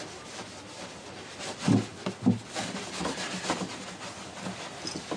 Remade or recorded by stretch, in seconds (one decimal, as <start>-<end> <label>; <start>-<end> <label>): 0.0-5.2 recorded